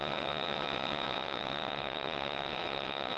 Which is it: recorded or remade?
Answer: remade